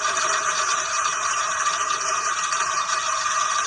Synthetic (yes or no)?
yes